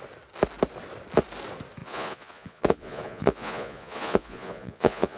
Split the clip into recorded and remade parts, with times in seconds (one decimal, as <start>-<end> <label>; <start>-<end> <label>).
0.0-1.8 recorded; 1.8-5.2 remade